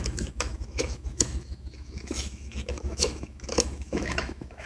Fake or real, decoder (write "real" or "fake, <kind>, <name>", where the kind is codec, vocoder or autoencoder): fake, autoencoder, DAC-VAE